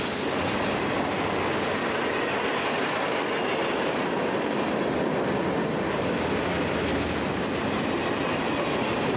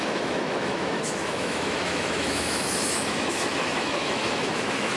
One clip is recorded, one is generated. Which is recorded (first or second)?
first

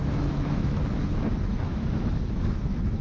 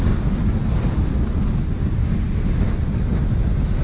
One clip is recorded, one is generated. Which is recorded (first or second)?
second